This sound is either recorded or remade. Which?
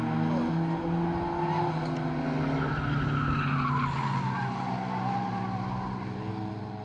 recorded